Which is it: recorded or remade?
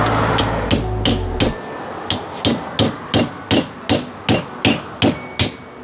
recorded